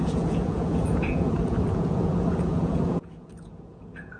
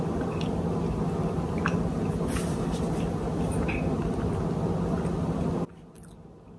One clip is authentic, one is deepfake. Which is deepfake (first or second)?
first